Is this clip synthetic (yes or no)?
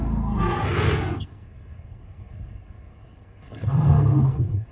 yes